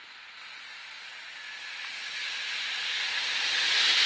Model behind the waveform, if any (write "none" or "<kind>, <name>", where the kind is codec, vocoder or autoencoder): none